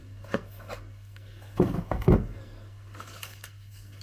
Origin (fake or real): fake